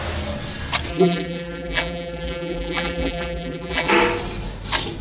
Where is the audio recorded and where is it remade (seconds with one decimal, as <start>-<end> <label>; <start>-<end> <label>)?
0.0-0.9 recorded; 0.9-3.9 remade; 3.9-5.0 recorded